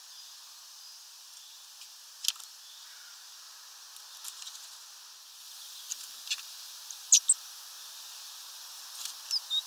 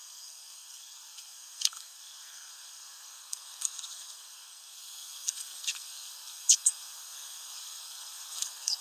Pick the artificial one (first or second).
second